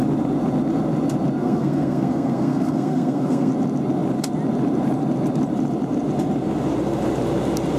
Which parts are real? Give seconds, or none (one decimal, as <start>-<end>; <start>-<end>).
0.0-1.4; 3.5-7.8